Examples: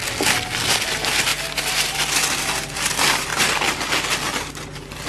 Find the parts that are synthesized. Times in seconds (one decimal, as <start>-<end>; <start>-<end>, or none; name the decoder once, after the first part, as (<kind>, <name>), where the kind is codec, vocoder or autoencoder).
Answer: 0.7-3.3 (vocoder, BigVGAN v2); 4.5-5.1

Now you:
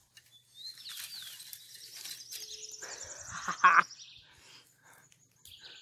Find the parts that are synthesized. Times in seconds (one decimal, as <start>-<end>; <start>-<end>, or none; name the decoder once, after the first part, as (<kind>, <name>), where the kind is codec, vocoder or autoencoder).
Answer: none

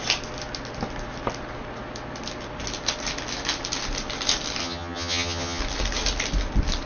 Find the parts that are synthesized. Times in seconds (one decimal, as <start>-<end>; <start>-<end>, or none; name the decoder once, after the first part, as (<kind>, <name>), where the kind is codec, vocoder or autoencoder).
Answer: 4.6-5.6 (vocoder, HiFi-GAN)

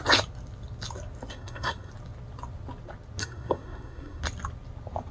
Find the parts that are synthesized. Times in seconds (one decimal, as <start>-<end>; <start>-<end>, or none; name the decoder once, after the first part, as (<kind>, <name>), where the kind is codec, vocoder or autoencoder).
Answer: 1.3-1.9 (codec, SNAC); 3.2-4.2

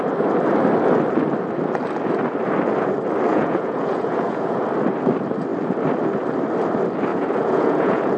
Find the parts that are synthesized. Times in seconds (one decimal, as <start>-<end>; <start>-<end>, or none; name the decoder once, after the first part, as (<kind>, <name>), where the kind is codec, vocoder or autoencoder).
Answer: 3.3-4.6 (vocoder, Vocos); 7.1-8.2

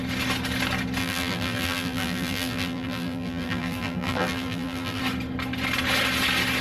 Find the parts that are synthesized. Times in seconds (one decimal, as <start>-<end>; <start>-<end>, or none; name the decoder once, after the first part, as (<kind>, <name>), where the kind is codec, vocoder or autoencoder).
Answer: 1.0-5.0 (vocoder, BigVGAN v2)

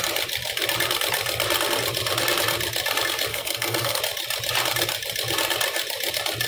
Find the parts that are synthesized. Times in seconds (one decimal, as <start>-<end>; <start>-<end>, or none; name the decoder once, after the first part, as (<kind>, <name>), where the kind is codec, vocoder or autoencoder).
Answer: 3.3-4.0 (codec, SNAC)

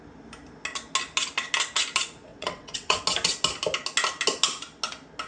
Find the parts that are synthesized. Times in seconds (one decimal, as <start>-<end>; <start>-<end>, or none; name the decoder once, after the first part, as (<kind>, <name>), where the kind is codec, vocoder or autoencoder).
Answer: 2.3-3.0 (vocoder, WaveNeXt)